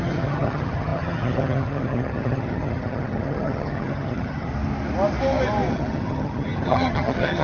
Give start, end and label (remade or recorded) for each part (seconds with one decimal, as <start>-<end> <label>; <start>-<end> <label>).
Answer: 0.0-4.5 remade; 4.5-5.7 recorded; 5.7-7.4 remade